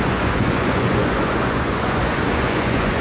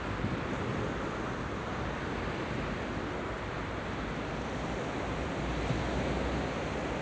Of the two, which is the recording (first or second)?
second